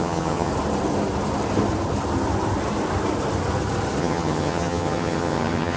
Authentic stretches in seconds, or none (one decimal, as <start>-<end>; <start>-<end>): 0.5-4.0